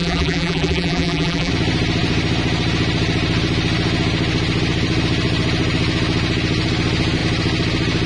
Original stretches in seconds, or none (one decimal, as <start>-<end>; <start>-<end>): 1.5-8.1